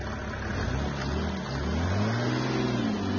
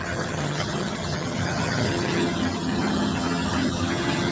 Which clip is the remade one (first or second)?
second